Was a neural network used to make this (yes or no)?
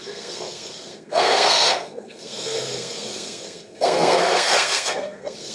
yes